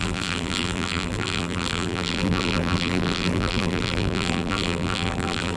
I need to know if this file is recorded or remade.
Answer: remade